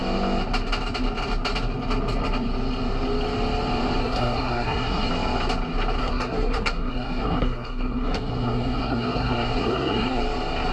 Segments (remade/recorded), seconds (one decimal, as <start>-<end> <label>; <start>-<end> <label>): 0.0-4.0 recorded; 4.0-5.1 remade; 5.1-6.0 recorded; 6.0-10.2 remade; 10.2-10.7 recorded